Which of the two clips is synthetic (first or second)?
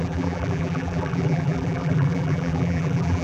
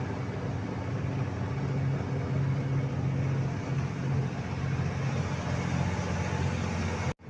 first